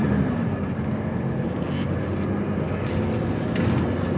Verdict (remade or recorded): recorded